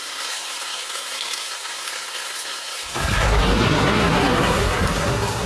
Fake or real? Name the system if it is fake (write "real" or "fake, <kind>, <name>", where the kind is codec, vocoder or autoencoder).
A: fake, codec, SNAC